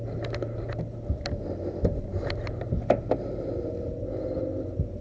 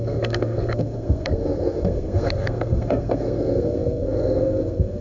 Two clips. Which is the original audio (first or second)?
first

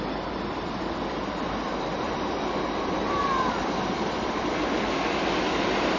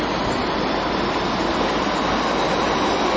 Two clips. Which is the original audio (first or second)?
second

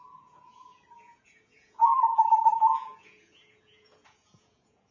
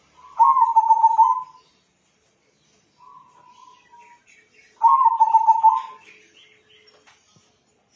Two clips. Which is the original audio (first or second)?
second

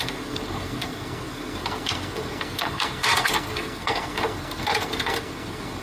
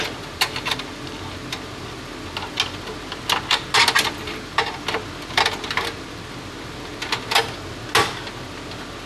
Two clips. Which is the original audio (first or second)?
second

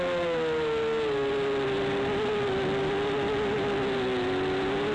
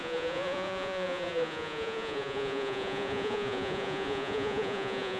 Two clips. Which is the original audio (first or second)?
first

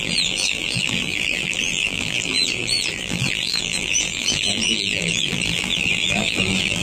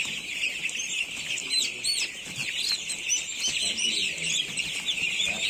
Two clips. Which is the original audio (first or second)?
second